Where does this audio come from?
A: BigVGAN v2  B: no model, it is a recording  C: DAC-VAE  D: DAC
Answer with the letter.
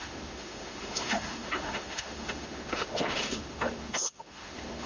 C